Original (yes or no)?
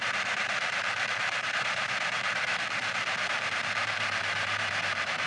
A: no